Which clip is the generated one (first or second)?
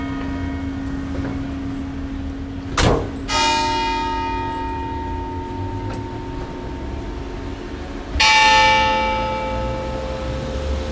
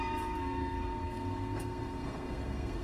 second